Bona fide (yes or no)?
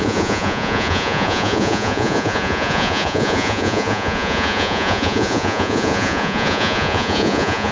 no